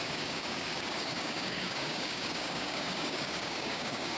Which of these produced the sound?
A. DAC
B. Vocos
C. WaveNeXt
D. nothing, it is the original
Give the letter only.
A